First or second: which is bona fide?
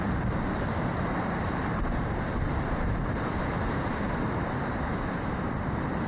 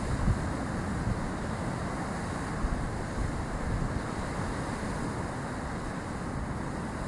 second